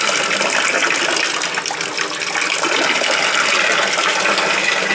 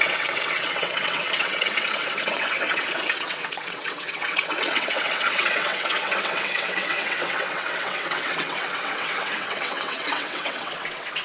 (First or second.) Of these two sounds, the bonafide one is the first